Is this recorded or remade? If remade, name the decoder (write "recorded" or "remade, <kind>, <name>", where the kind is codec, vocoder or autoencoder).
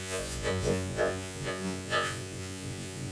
remade, vocoder, Vocos